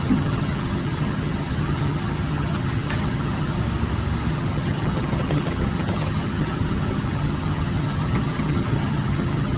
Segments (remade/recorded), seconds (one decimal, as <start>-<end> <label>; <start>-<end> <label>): 0.0-3.6 remade; 3.6-4.3 recorded; 4.3-9.6 remade